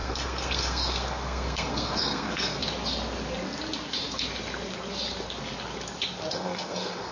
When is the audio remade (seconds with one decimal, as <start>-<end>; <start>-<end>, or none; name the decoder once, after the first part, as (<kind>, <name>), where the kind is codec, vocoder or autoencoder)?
0.0-2.6 (codec, SNAC); 6.3-7.1